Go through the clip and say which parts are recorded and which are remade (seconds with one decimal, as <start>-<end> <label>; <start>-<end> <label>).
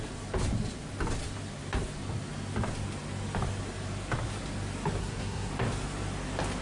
0.0-5.0 recorded; 5.0-5.5 remade; 5.5-6.6 recorded